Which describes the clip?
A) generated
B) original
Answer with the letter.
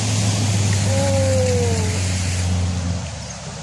B